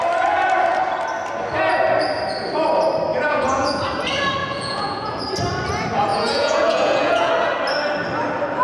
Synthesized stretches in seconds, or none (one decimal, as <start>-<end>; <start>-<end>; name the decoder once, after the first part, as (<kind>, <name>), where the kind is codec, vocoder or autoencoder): 3.1-3.8 (vocoder, Vocos); 4.4-5.2; 6.1-7.3